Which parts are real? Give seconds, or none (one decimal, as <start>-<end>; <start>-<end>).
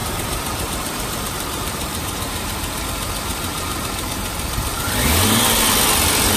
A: 2.8-3.3; 4.1-6.4